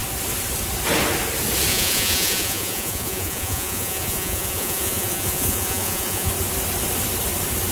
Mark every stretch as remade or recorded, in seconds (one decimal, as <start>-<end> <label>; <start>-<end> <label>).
0.0-1.7 recorded; 1.7-6.3 remade; 6.3-7.7 recorded